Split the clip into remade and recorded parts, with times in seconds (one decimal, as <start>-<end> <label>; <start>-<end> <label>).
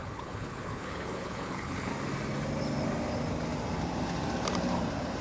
0.0-1.9 remade; 1.9-5.2 recorded